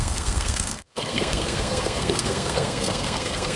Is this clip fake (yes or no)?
yes